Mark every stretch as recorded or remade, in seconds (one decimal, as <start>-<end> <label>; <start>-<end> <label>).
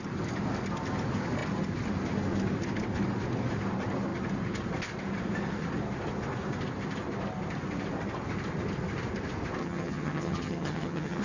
0.0-9.6 recorded; 9.6-11.2 remade